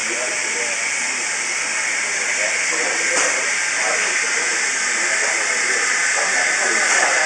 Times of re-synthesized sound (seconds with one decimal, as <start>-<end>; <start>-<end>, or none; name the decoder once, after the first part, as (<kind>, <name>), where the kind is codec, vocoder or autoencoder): 0.0-3.8 (vocoder, BigVGAN v2); 4.5-5.6; 6.0-7.3